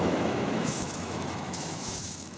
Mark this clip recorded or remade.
remade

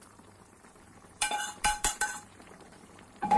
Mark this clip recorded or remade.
remade